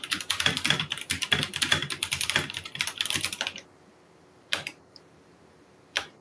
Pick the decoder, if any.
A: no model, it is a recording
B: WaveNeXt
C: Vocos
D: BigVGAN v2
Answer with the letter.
D